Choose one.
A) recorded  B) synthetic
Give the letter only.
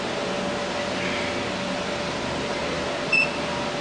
A